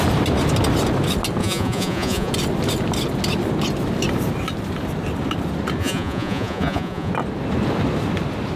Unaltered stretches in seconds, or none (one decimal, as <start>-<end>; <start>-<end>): 0.0-1.4; 2.3-5.8; 7.1-8.6